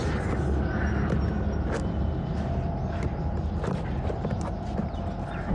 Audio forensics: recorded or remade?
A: recorded